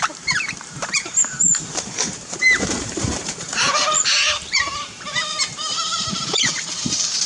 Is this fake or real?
fake